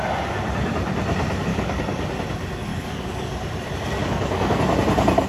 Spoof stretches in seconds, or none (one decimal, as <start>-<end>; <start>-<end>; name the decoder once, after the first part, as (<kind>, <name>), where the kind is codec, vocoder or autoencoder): 1.5-2.1 (codec, DAC); 2.7-3.3; 4.0-4.6